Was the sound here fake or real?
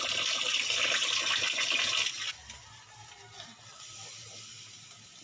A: real